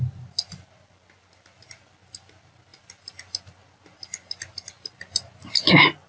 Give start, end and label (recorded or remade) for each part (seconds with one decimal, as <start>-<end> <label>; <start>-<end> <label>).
0.0-6.1 recorded